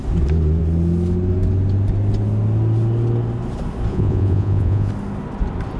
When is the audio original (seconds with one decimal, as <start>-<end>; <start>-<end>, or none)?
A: 0.0-3.9; 4.9-5.8

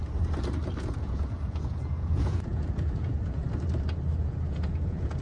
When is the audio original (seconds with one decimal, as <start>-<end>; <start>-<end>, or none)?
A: 0.0-0.9; 3.4-4.2

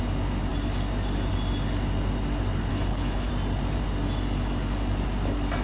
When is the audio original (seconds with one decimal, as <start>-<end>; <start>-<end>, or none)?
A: 0.0-2.7; 3.3-5.6

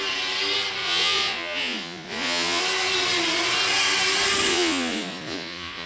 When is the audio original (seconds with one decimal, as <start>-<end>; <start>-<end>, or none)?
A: 0.0-0.8; 2.6-4.5

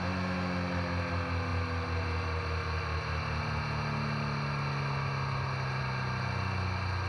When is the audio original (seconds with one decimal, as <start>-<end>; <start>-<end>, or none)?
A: 0.0-7.1

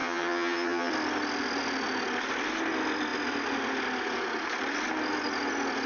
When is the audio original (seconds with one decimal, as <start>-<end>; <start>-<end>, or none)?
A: 0.9-5.9

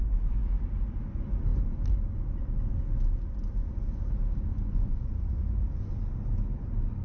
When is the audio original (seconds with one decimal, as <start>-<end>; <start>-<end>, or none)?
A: 0.0-4.5; 5.9-7.0